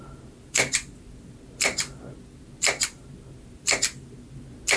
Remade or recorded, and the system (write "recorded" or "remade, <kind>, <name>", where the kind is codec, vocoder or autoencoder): recorded